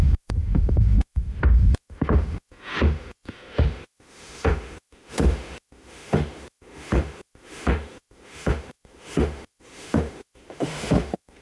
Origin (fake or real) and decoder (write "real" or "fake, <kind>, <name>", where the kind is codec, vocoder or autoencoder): fake, autoencoder, DAC-VAE